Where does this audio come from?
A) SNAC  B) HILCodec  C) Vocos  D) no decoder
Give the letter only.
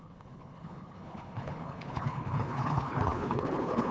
B